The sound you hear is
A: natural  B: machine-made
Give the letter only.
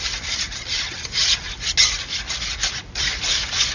A